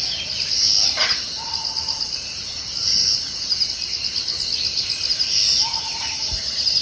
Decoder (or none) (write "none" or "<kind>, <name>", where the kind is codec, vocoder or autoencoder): none